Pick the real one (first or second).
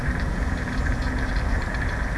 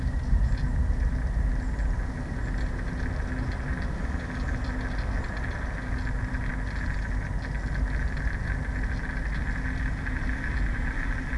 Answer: second